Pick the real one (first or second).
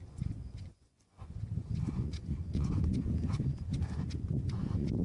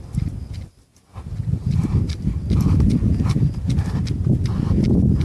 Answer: second